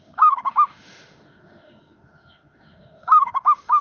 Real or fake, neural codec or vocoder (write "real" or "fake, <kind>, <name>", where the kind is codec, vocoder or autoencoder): fake, autoencoder, DAC-VAE